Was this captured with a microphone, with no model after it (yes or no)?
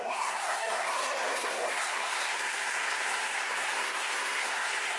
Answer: no